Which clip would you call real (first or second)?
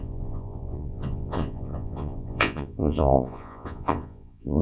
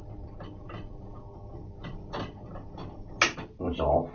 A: second